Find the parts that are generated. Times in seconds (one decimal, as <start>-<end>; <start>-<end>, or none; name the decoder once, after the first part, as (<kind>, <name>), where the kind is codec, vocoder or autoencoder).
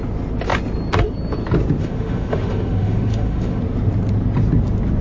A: 1.8-3.6 (autoencoder, DAC-VAE)